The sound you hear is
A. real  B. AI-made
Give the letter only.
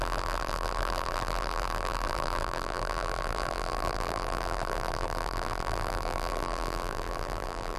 B